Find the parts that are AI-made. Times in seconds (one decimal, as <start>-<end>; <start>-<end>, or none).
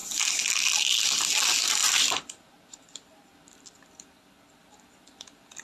1.8-2.9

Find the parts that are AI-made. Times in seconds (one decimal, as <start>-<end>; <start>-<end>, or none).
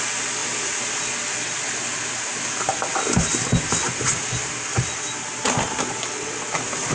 none